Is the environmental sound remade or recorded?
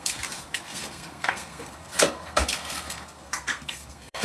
remade